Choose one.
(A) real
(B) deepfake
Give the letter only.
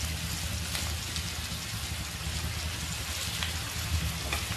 A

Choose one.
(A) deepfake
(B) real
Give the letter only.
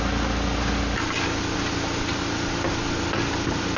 B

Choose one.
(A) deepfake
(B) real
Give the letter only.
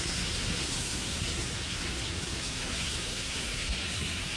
A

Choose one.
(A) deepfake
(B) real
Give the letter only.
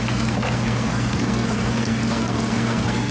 A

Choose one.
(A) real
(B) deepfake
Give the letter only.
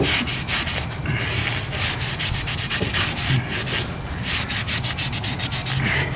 A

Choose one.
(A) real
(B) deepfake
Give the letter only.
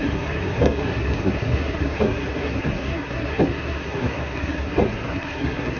B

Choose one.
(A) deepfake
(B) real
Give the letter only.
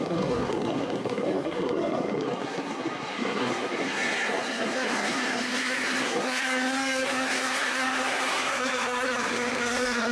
A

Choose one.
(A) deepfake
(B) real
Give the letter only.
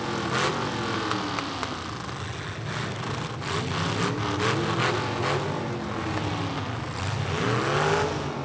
B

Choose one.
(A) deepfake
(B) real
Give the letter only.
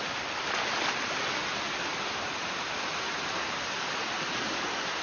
B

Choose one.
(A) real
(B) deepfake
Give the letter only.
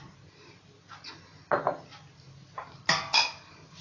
A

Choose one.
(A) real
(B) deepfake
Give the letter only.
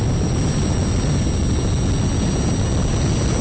A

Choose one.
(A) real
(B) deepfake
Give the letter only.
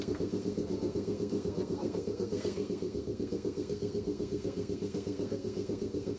B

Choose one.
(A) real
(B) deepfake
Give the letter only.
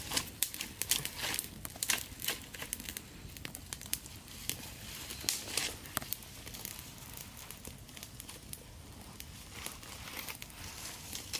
A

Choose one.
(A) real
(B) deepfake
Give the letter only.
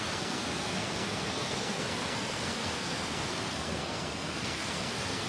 B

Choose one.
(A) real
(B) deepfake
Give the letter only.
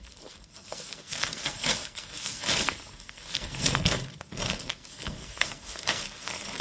B